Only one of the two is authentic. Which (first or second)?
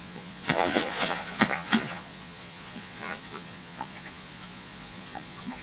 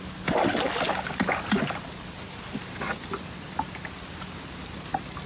second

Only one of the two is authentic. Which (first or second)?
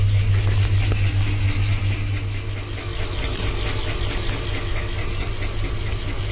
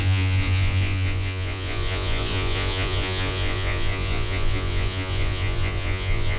first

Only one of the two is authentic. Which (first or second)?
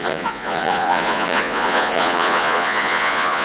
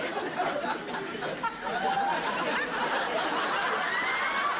second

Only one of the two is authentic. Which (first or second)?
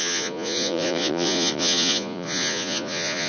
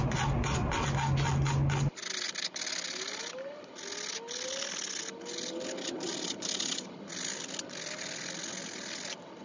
second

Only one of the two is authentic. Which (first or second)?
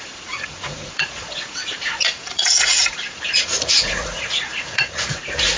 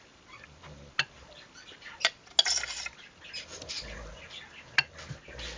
second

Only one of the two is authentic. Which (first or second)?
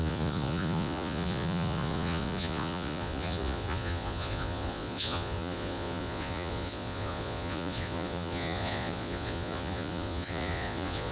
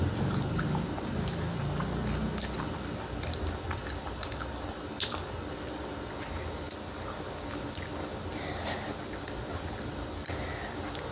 second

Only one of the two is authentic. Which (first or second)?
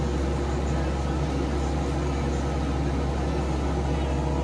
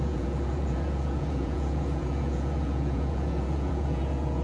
first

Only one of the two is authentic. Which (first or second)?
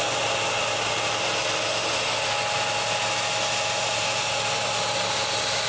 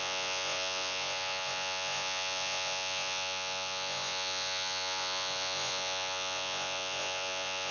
first